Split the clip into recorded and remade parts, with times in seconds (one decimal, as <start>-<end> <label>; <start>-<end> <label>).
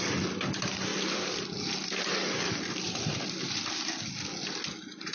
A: 0.0-0.9 recorded; 0.9-3.7 remade; 3.7-5.1 recorded